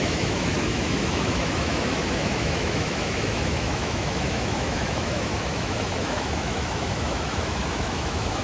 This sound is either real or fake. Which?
fake